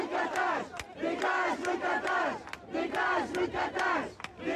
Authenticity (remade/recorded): recorded